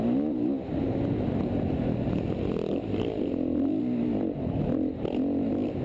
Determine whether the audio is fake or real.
real